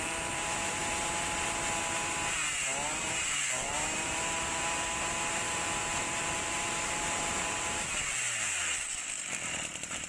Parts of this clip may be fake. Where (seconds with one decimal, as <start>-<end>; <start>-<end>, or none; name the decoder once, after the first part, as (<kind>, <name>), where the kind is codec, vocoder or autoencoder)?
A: 0.0-0.8 (vocoder, BigVGAN v2); 3.0-10.1